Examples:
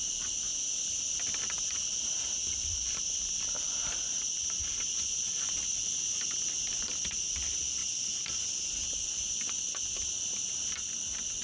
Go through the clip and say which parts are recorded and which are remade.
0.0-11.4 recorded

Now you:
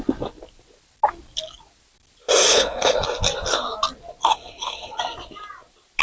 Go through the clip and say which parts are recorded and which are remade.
0.0-2.5 recorded; 2.5-3.0 remade; 3.0-4.3 recorded; 4.3-5.0 remade; 5.0-6.0 recorded

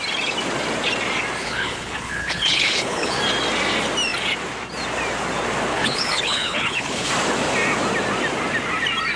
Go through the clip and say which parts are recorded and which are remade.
0.0-1.4 recorded; 1.4-3.2 remade; 3.2-5.7 recorded; 5.7-7.1 remade; 7.1-9.2 recorded